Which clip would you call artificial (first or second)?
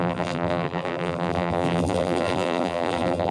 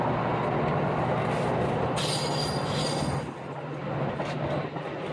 first